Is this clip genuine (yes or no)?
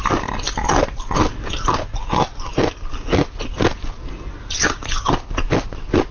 yes